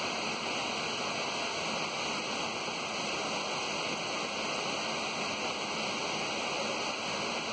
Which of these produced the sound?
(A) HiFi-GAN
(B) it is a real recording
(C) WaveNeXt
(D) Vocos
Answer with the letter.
B